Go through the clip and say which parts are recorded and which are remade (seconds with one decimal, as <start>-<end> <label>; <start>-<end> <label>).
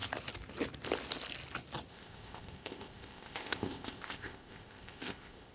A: 0.0-1.9 recorded; 1.9-5.5 remade